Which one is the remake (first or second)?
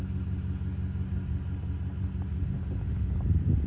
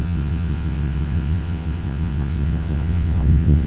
second